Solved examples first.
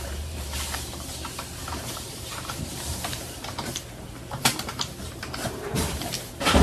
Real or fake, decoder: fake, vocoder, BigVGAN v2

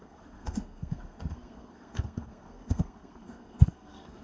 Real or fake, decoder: fake, codec, SNAC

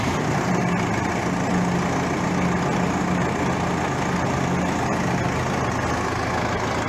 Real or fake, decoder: real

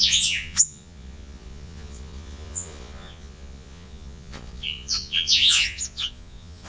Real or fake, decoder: fake, vocoder, Vocos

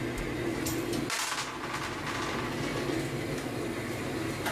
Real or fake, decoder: real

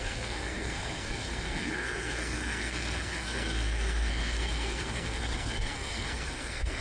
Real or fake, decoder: fake, codec, SNAC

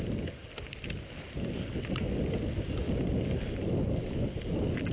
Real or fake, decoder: real